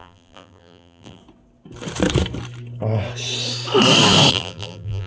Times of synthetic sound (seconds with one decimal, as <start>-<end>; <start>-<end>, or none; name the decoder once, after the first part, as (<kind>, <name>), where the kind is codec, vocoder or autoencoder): 0.0-1.2 (vocoder, BigVGAN v2); 4.3-5.1

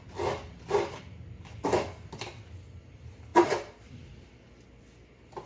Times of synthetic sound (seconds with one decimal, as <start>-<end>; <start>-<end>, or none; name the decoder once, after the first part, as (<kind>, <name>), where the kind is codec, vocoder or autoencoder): 3.3-4.1 (vocoder, BigVGAN v2)

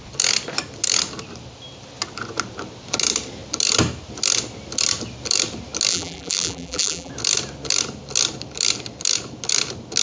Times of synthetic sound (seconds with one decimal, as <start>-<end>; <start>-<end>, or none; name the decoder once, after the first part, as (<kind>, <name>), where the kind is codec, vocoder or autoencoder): 5.9-7.1 (vocoder, BigVGAN v2)

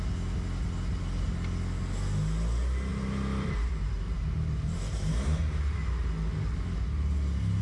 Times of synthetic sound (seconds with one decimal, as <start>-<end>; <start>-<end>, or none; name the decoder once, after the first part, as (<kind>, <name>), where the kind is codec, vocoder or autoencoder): 2.9-5.4 (vocoder, BigVGAN v2)

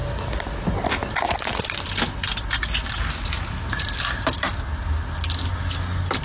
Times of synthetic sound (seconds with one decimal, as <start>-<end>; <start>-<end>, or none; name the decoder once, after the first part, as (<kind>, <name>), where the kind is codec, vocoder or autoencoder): none

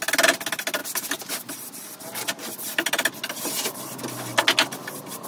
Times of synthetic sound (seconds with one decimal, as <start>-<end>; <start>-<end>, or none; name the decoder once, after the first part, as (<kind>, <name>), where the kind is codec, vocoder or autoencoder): none

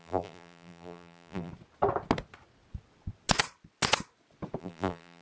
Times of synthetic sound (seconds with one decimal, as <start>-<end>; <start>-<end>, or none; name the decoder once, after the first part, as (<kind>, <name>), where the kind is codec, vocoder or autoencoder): 0.0-1.5 (vocoder, BigVGAN v2); 4.6-5.2

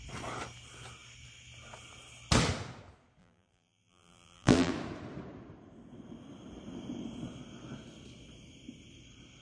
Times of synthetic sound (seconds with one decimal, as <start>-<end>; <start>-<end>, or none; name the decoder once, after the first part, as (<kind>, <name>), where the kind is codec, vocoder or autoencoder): 3.2-4.7 (vocoder, BigVGAN v2)